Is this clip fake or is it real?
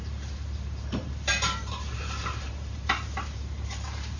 fake